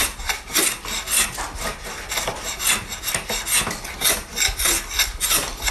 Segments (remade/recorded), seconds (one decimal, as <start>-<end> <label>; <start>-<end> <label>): 0.0-5.7 recorded